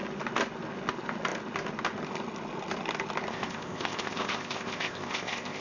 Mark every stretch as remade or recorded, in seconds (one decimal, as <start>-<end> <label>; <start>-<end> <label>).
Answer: 0.0-3.3 recorded; 3.3-5.6 remade